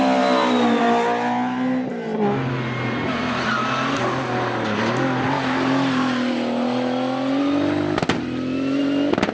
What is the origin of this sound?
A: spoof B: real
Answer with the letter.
B